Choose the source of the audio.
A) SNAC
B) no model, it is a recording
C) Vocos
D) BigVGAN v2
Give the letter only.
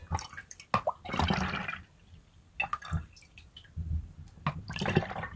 B